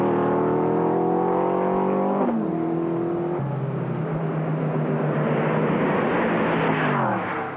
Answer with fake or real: real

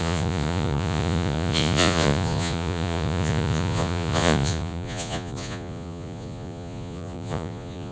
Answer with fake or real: fake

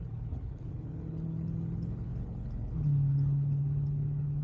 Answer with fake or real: fake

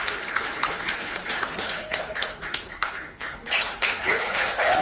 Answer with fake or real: fake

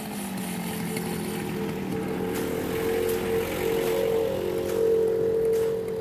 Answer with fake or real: real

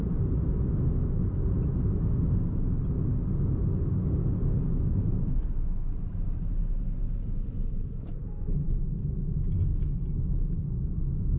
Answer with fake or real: real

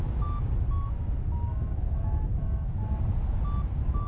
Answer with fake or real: real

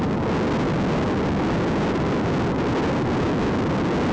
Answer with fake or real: real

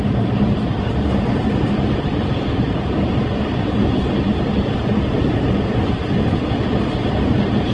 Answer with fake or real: real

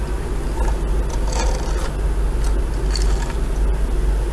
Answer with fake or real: real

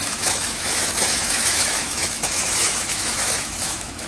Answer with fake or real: fake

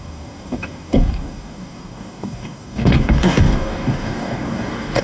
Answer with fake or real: fake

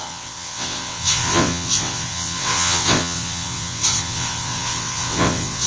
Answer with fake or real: fake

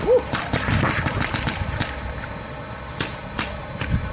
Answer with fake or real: real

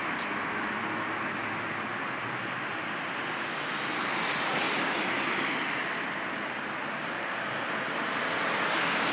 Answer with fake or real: real